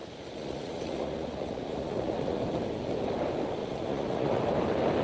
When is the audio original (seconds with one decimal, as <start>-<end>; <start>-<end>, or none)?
2.4-3.6; 4.4-5.0